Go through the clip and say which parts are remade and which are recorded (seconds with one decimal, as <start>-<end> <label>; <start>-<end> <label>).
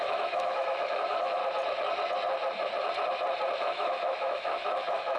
0.0-1.4 remade; 1.4-3.6 recorded; 3.6-5.2 remade